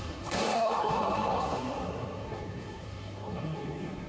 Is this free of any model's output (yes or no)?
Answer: no